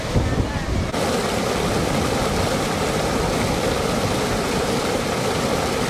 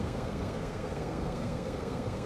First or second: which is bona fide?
first